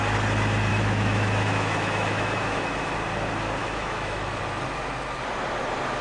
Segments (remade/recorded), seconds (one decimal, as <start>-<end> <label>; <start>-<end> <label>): 0.0-0.7 recorded; 0.7-2.9 remade; 2.9-3.6 recorded; 3.6-4.4 remade; 4.4-6.0 recorded